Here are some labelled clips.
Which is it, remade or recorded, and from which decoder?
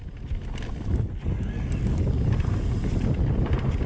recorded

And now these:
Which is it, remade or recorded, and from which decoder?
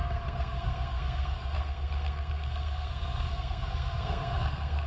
remade, codec, SNAC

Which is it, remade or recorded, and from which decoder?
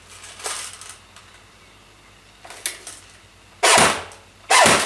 recorded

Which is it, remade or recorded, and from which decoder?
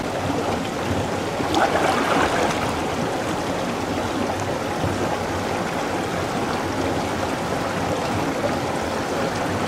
recorded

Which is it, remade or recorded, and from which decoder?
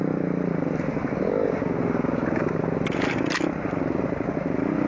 recorded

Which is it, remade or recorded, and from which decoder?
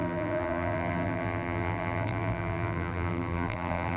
remade, vocoder, BigVGAN v2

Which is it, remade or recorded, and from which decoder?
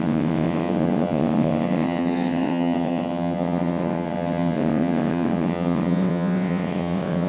remade, vocoder, WaveNeXt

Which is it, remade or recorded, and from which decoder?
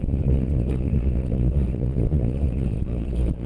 remade, vocoder, Vocos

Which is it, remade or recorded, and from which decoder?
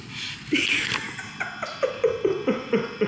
recorded